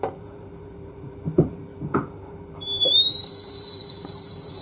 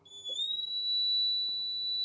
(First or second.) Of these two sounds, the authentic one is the second